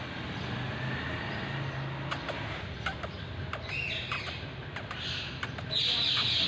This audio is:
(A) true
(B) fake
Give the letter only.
A